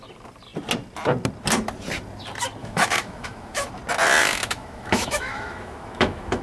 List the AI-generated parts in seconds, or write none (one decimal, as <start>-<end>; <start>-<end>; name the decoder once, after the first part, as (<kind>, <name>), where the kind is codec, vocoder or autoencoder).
2.6-3.7 (autoencoder, DAC-VAE); 4.2-6.4